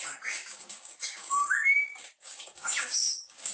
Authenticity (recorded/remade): remade